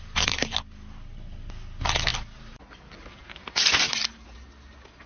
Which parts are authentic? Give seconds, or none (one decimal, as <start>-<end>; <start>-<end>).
0.0-5.1